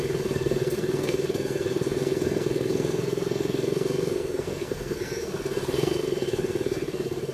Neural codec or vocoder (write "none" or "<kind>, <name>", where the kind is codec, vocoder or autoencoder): codec, SNAC